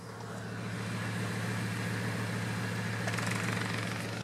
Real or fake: real